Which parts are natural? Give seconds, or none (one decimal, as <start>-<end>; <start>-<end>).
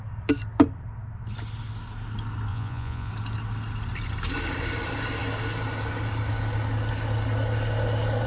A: 0.0-2.5; 3.1-8.3